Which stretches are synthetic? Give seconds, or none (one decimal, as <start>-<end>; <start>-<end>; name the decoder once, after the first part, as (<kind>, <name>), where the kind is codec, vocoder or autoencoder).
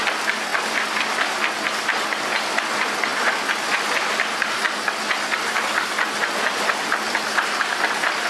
none